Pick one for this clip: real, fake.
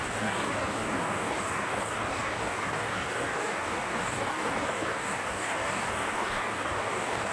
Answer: fake